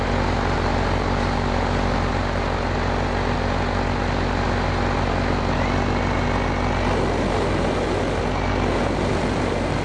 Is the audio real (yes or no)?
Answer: yes